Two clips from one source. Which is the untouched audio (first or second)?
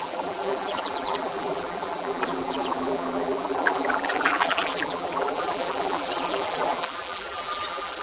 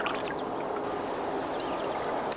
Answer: second